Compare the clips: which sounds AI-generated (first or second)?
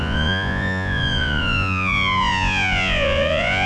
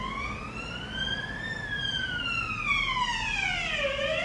first